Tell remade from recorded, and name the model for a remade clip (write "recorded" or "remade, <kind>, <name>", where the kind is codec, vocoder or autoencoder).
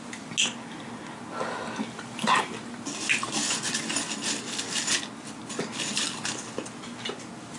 recorded